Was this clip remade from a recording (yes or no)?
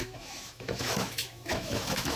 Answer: yes